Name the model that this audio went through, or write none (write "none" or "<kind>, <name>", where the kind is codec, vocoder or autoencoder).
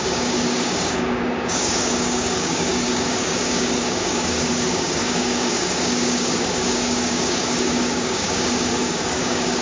codec, DAC